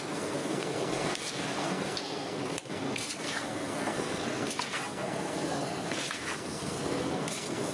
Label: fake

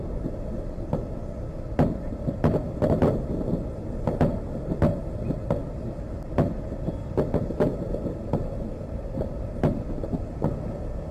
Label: real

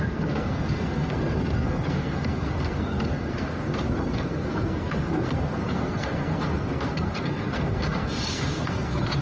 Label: fake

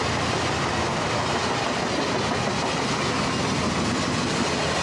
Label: real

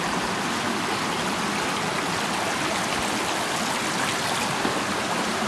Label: real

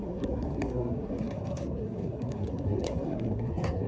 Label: fake